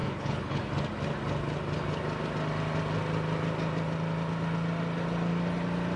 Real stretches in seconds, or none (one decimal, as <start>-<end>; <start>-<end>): 0.6-6.0

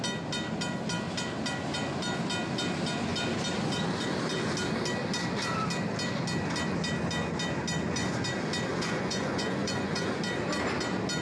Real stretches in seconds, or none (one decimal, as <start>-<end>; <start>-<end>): 0.0-8.7; 10.2-11.2

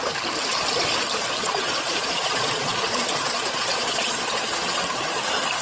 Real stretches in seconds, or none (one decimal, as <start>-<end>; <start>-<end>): 0.0-1.4; 4.8-5.6

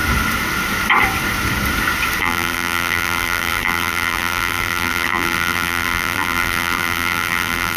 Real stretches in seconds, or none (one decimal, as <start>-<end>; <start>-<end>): 0.0-2.2